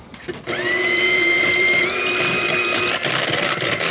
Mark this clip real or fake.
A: fake